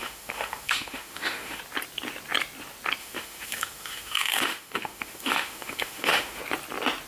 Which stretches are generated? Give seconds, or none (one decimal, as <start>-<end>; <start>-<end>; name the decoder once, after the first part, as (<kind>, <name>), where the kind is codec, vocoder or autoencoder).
0.0-1.6 (autoencoder, DAC-VAE); 3.0-6.4